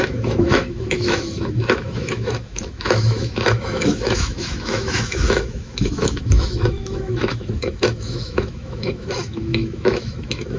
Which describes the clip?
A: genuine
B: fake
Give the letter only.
B